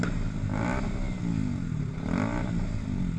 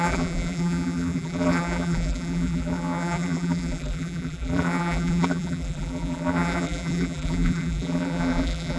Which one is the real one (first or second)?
first